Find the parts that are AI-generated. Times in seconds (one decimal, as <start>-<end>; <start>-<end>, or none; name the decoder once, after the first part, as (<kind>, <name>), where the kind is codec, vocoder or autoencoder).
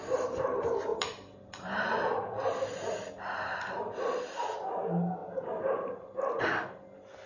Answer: none